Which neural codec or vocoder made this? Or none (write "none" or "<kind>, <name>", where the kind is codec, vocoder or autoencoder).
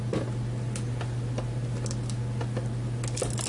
none